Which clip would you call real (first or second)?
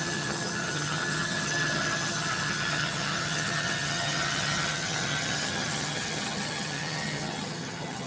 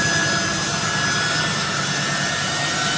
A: second